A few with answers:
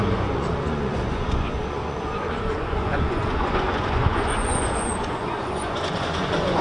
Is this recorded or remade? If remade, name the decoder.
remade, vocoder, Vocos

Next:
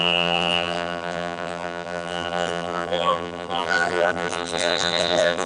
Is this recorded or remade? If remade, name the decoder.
remade, vocoder, BigVGAN v2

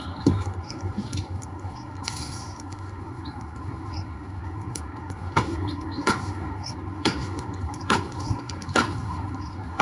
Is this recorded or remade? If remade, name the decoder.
remade, codec, SNAC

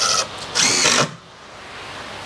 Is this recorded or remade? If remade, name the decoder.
recorded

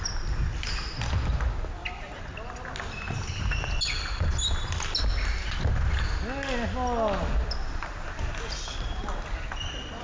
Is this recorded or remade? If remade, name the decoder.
recorded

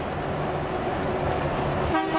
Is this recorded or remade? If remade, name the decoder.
recorded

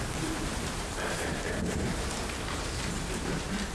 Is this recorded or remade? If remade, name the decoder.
remade, vocoder, BigVGAN v2